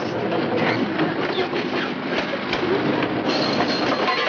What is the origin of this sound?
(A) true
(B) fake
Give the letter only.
A